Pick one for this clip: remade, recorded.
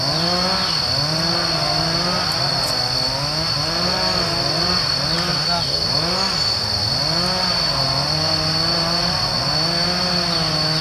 recorded